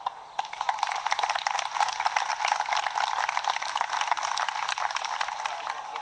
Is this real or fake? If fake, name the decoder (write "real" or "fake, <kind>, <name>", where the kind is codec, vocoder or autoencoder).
real